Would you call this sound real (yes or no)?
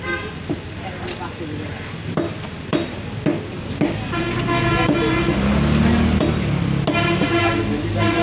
yes